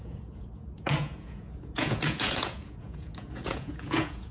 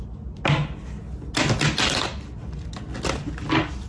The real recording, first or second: second